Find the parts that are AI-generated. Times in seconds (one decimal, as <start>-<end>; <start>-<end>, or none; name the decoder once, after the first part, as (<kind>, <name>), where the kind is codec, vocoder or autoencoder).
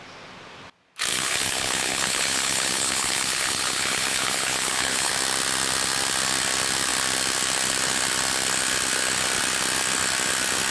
1.1-5.1 (codec, HILCodec)